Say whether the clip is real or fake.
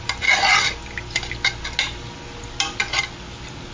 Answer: real